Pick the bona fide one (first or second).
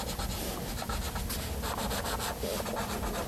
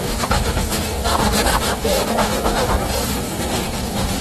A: first